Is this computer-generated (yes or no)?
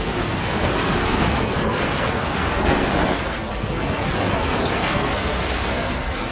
yes